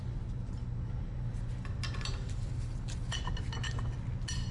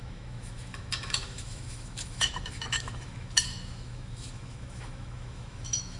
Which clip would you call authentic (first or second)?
first